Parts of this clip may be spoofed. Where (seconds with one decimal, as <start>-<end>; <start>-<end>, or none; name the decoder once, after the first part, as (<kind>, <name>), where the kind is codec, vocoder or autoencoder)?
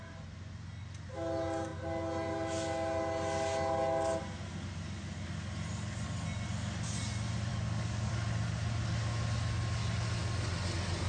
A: 7.5-8.1 (codec, DAC)